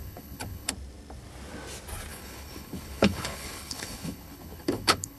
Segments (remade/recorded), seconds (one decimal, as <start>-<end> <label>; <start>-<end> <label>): 0.0-0.7 remade; 0.7-2.1 recorded; 2.1-5.2 remade